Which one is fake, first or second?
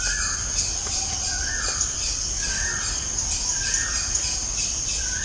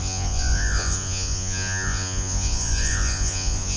second